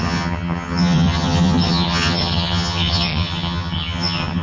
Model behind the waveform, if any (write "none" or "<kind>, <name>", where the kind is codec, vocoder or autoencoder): vocoder, HiFi-GAN